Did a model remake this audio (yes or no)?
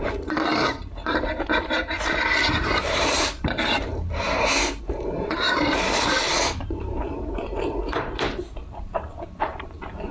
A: yes